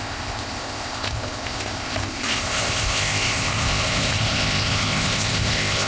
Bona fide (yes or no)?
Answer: no